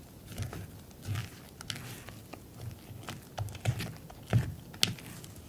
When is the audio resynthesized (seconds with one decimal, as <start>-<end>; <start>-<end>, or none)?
none